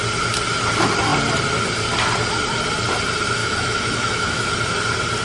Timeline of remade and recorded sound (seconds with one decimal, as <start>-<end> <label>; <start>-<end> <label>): 0.0-3.4 recorded; 3.4-4.5 remade; 4.5-5.2 recorded